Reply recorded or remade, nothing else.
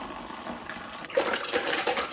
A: recorded